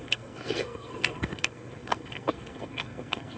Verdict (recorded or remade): remade